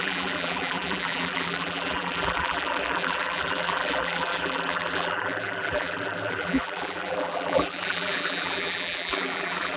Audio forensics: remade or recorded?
remade